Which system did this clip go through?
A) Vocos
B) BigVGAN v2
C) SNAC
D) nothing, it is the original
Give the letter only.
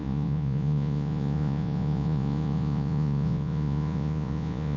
A